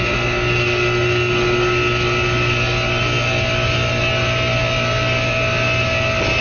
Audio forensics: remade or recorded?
recorded